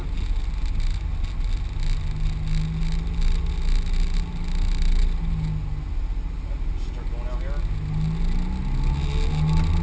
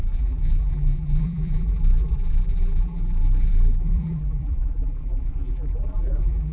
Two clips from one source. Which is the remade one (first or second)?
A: second